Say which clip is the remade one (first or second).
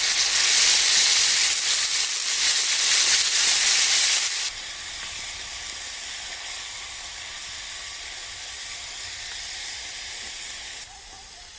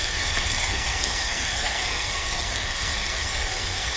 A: second